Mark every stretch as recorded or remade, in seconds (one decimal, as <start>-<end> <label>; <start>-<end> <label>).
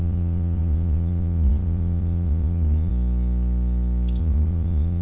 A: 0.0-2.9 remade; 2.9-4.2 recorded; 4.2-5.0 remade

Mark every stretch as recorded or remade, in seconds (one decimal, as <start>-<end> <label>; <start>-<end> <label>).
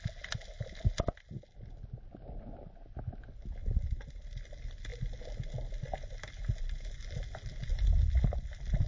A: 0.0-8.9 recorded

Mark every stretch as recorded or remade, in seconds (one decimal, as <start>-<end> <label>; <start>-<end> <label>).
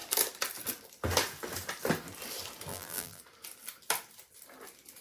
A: 0.0-2.7 recorded; 2.7-3.2 remade; 3.2-5.0 recorded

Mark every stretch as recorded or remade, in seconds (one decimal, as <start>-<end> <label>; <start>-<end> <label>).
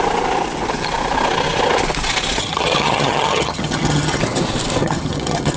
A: 0.0-2.4 recorded; 2.4-4.2 remade; 4.2-4.8 recorded; 4.8-5.6 remade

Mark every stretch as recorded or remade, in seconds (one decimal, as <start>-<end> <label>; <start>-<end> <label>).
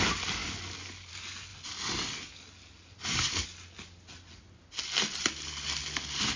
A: 0.0-6.4 recorded